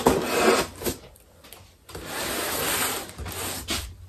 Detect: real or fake real